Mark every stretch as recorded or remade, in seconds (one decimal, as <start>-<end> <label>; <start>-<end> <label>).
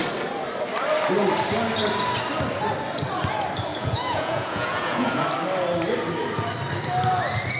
0.0-3.7 recorded; 3.7-5.2 remade; 5.2-7.6 recorded